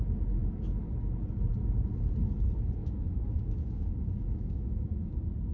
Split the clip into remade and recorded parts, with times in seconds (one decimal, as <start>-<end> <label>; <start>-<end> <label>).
0.0-0.4 recorded; 0.4-0.9 remade; 0.9-2.8 recorded; 2.8-5.1 remade; 5.1-5.5 recorded